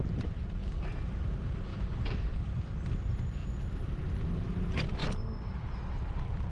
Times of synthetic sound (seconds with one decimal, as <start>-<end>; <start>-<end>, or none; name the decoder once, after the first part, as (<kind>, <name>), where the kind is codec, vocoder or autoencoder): 0.0-6.5 (vocoder, BigVGAN v2)